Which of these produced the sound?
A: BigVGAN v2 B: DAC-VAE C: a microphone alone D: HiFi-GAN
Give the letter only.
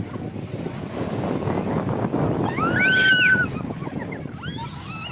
C